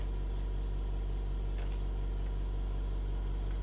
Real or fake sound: real